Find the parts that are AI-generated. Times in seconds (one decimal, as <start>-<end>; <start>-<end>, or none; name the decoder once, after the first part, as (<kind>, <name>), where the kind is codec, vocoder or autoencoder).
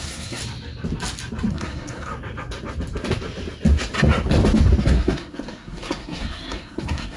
0.0-0.4 (codec, SNAC); 1.5-2.1; 4.8-7.2